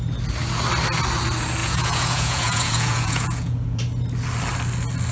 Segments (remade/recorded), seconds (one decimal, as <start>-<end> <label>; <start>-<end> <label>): 0.0-1.6 recorded; 1.6-3.8 remade; 3.8-5.1 recorded